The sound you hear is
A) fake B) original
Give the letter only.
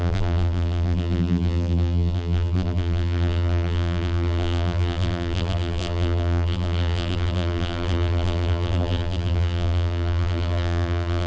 A